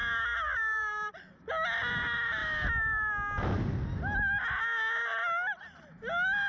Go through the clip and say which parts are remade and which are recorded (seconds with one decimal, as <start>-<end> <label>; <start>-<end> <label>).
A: 0.0-1.5 remade; 1.5-6.5 recorded